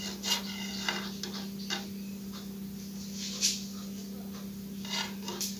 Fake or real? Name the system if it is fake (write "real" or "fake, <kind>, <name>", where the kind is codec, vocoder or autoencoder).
real